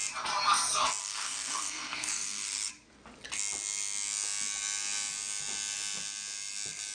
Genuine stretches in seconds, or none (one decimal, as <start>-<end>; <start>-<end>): 0.0-1.0; 2.7-6.9

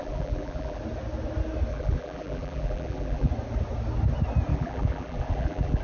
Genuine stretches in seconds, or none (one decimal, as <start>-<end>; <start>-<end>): 0.8-1.7; 3.3-4.5

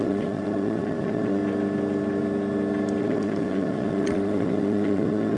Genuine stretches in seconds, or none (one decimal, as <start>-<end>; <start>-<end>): 1.4-3.0

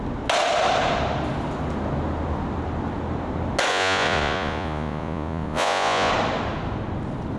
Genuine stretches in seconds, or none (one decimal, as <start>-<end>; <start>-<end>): 0.0-3.7; 6.1-7.4

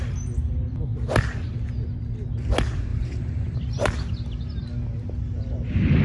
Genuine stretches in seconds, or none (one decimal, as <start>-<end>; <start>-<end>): 0.0-2.9; 4.1-6.0

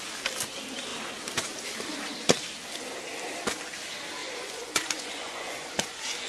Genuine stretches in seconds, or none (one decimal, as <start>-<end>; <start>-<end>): 0.0-4.2

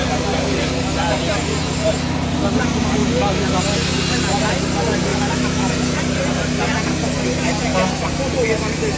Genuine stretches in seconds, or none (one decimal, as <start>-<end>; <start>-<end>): 0.0-3.0; 3.6-5.1; 5.7-9.0

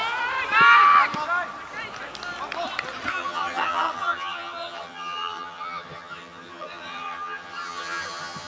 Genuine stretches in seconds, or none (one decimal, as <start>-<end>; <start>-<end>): 0.0-3.1